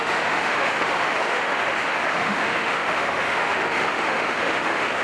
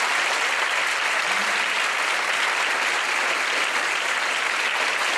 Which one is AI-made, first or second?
first